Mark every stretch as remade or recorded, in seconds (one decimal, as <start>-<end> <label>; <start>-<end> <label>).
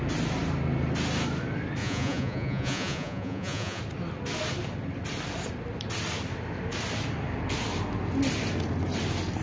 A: 0.0-1.8 recorded; 1.8-3.8 remade; 3.8-9.4 recorded